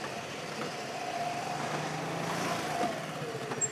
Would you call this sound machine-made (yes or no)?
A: no